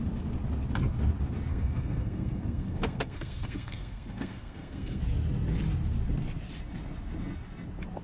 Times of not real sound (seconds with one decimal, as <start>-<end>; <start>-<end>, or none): 1.5-5.0